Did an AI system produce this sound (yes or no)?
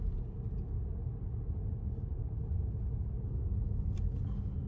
no